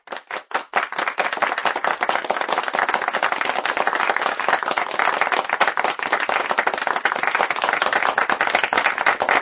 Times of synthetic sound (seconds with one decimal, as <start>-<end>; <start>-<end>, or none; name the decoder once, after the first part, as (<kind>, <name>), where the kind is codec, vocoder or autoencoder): none